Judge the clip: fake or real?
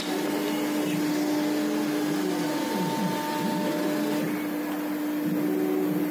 real